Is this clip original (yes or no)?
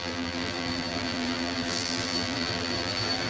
no